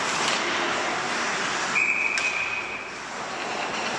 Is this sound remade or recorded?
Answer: recorded